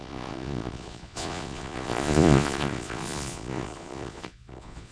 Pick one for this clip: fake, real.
fake